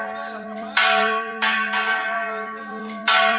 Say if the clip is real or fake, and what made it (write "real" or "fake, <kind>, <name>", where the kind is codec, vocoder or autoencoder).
fake, vocoder, BigVGAN v2